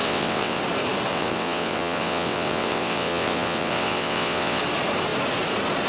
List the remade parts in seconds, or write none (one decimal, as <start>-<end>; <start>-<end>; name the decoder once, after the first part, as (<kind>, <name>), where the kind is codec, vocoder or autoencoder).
0.0-0.6 (vocoder, WaveNeXt); 1.1-4.6